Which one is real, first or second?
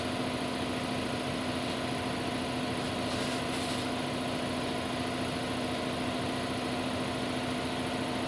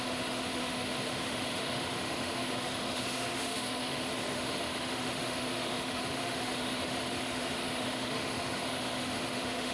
first